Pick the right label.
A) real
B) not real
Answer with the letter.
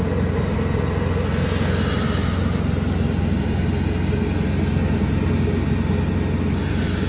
A